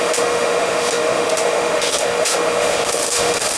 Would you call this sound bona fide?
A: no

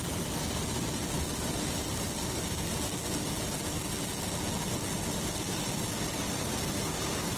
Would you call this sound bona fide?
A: yes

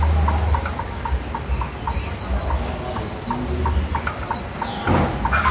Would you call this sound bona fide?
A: yes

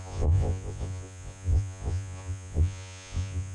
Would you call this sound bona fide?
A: no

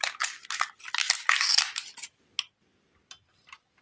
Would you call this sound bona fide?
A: yes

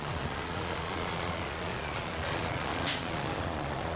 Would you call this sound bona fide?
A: no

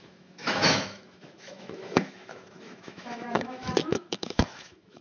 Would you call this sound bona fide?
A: no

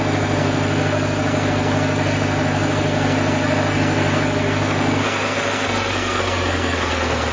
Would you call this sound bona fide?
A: no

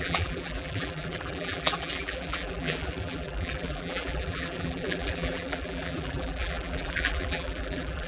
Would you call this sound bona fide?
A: no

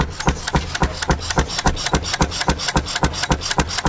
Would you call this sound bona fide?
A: yes